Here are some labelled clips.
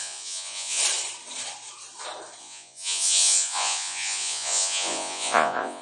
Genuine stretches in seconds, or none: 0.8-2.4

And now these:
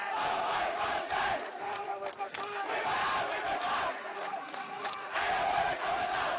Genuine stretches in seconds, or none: 1.9-3.9

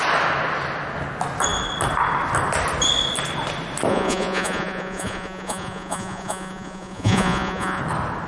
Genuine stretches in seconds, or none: 0.0-3.9; 7.8-8.3

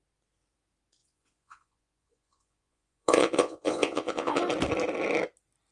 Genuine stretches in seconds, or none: 0.0-1.0; 4.4-5.7

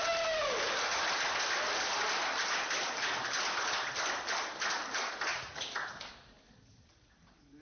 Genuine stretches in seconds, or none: 0.0-5.3; 5.9-7.6